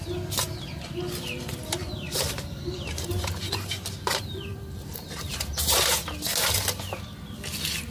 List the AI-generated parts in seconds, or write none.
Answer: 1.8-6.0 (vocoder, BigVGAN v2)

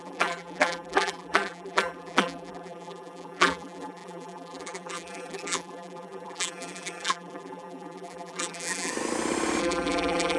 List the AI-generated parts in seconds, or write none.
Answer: 0.0-8.9 (vocoder, BigVGAN v2); 9.6-10.4

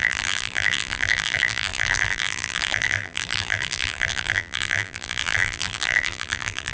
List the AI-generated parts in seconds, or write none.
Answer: 0.0-6.7 (vocoder, BigVGAN v2)

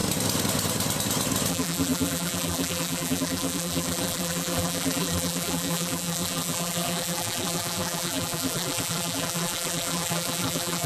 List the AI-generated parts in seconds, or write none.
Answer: 1.5-10.9 (vocoder, BigVGAN v2)

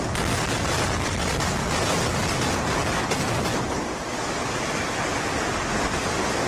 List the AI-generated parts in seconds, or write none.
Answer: none